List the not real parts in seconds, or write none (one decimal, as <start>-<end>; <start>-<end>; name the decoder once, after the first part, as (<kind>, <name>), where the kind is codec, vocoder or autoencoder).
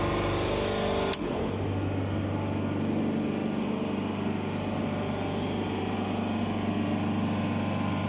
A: none